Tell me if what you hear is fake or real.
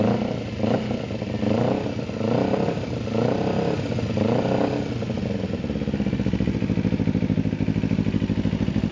real